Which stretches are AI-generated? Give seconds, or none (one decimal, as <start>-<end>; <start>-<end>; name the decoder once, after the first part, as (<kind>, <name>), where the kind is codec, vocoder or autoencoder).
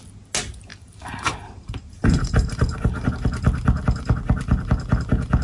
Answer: 0.7-3.1 (vocoder, BigVGAN v2)